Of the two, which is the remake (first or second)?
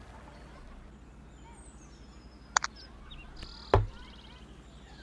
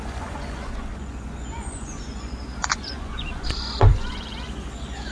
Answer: second